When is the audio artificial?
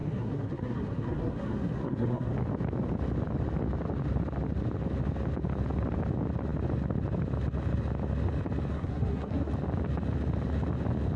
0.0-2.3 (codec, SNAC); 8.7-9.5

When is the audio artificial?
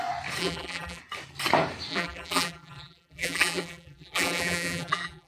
0.4-1.0 (vocoder, BigVGAN v2); 1.9-5.3